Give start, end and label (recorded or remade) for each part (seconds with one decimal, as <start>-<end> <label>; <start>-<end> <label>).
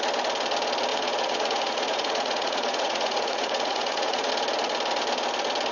0.0-0.9 recorded; 0.9-4.3 remade; 4.3-5.7 recorded